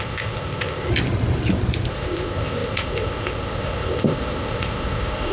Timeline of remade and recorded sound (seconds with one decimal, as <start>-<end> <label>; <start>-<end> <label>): 0.0-0.9 remade; 0.9-1.9 recorded; 1.9-5.3 remade